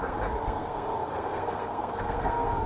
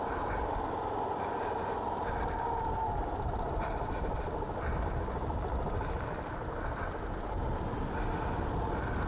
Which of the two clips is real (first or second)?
second